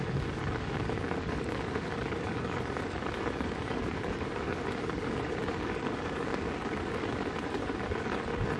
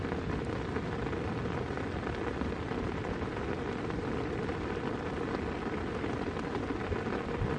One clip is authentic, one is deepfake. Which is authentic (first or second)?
second